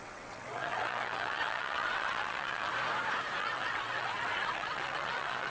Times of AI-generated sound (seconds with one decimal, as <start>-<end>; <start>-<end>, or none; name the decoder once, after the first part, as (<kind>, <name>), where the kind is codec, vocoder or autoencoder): 0.0-2.7 (vocoder, WaveNeXt); 3.4-5.5